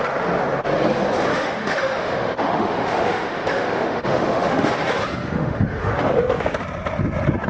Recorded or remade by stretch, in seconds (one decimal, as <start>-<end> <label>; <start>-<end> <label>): 0.0-1.3 recorded; 1.3-4.7 remade; 4.7-5.2 recorded; 5.2-6.6 remade; 6.6-7.5 recorded